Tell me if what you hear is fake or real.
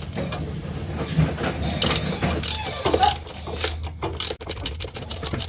real